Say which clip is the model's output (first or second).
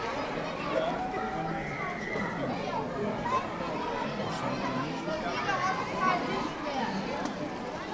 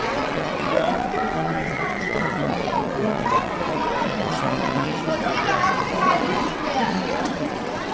second